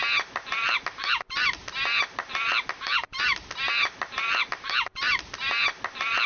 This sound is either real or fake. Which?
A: real